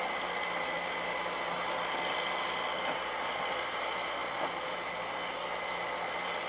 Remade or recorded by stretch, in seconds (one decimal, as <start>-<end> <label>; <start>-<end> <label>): 0.0-6.5 recorded